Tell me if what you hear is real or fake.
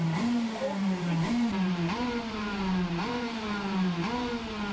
fake